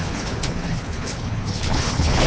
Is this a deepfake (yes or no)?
yes